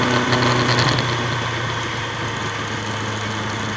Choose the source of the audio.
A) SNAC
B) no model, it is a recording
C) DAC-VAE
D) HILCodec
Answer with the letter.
B